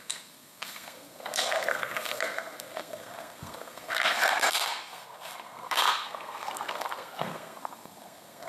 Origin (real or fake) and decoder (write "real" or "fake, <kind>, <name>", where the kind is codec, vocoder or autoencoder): fake, codec, SNAC